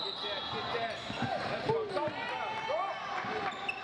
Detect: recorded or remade recorded